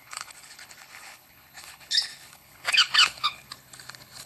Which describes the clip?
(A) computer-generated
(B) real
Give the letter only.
A